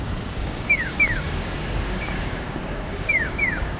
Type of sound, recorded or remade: remade